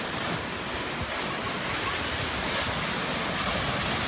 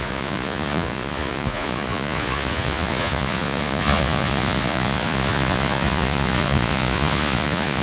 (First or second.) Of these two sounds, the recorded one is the first